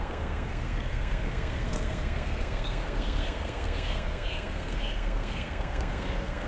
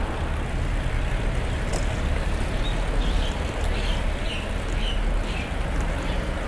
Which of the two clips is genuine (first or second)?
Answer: second